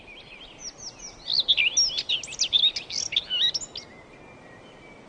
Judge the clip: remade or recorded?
recorded